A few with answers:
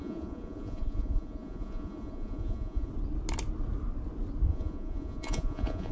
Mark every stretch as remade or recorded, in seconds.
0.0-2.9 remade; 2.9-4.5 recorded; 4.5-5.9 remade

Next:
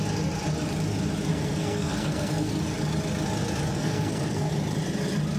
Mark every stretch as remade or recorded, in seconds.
0.0-1.3 recorded; 1.3-2.5 remade; 2.5-3.7 recorded; 3.7-4.5 remade; 4.5-5.4 recorded